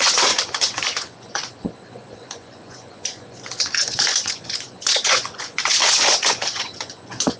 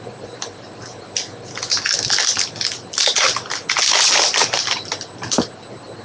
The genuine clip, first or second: second